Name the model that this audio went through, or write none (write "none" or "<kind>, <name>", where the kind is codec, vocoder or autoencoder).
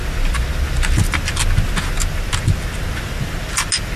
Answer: none